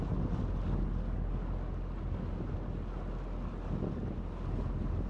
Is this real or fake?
real